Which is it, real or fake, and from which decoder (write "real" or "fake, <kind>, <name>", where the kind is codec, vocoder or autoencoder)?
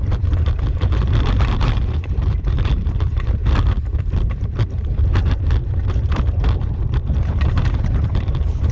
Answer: fake, vocoder, BigVGAN v2